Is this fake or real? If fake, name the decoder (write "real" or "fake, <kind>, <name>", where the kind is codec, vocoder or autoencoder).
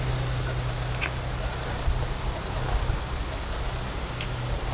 real